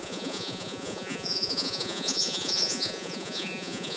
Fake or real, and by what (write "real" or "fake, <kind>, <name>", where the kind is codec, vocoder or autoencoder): fake, vocoder, Vocos